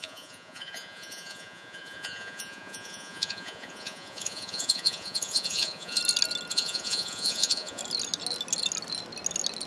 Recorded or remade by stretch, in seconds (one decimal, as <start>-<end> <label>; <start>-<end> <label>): 0.0-6.0 remade; 6.0-6.5 recorded; 6.5-7.8 remade; 7.8-9.7 recorded